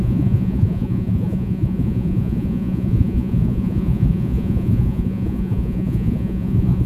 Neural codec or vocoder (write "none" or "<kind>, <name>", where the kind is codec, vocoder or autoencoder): vocoder, Vocos